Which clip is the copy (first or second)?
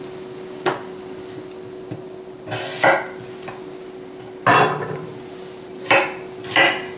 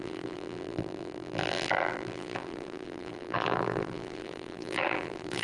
second